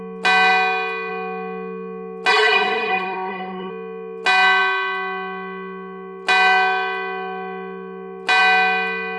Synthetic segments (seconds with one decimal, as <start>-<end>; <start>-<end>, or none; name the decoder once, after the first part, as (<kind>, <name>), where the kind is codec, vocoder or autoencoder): 2.3-3.7 (codec, SNAC)